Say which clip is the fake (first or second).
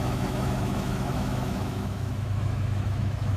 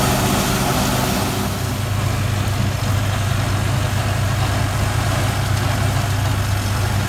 first